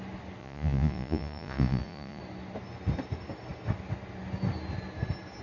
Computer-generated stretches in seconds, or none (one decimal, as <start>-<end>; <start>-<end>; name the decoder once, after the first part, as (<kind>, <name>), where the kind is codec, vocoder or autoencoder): 0.4-2.2 (vocoder, Vocos)